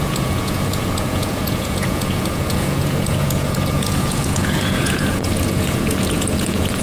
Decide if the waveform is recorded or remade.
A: remade